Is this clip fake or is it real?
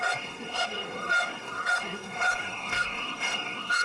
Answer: fake